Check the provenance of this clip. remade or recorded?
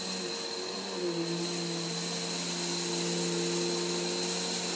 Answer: recorded